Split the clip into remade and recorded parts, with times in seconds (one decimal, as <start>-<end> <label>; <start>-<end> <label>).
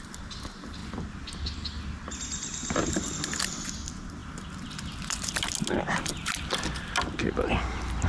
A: 0.0-8.1 recorded